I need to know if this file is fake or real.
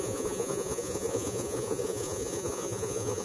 fake